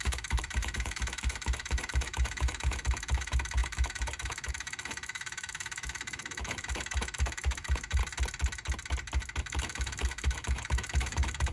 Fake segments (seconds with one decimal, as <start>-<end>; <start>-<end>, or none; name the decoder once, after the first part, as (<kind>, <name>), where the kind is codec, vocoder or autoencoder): 0.0-8.0 (autoencoder, DAC-VAE); 9.4-11.5